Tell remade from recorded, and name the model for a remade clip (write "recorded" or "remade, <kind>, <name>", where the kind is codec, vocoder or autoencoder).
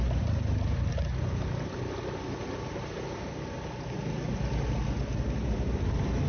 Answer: recorded